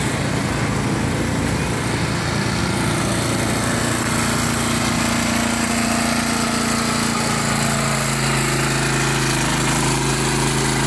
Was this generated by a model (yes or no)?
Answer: no